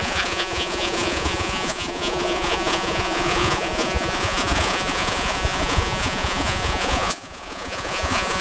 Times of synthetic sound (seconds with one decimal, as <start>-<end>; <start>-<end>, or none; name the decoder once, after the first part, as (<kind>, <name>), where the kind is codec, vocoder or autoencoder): 0.0-8.4 (vocoder, Vocos)